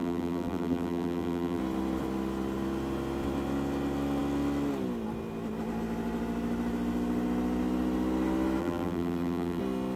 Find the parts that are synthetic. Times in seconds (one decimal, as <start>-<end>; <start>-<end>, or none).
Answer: 0.0-1.6; 8.6-9.6